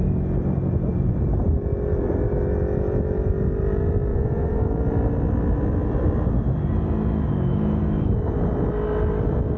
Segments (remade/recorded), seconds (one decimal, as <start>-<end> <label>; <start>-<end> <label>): 0.0-4.1 recorded; 4.1-4.6 remade; 4.6-9.6 recorded